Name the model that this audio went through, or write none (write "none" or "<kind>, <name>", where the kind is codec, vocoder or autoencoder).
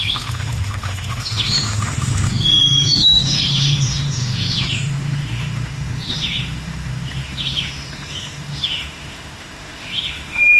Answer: autoencoder, DAC-VAE